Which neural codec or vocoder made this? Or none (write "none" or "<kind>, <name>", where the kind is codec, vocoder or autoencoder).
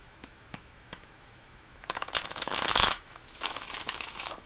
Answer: autoencoder, DAC-VAE